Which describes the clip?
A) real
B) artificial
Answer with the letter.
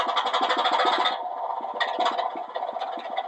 A